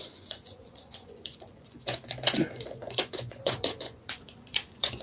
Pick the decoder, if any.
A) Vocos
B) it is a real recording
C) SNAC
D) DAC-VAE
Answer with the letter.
A